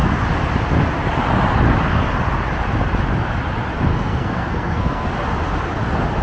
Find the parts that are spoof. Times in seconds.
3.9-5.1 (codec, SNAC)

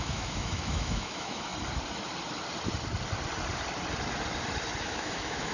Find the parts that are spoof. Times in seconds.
0.0-1.5 (autoencoder, DAC-VAE); 4.8-5.5

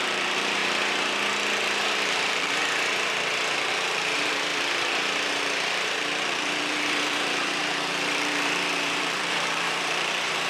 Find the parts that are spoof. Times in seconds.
0.0-0.6 (vocoder, BigVGAN v2); 1.6-2.6; 3.7-4.5; 5.3-10.5

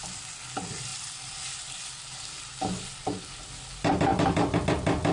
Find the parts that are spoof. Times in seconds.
none

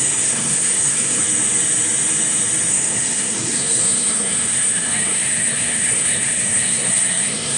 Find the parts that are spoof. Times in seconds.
0.0-1.2 (codec, SNAC); 2.7-7.6

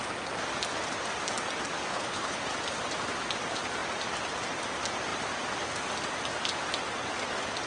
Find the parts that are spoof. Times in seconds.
1.9-2.4 (codec, HILCodec)

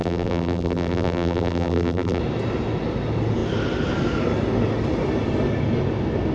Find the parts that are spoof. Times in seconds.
0.0-2.2 (vocoder, BigVGAN v2)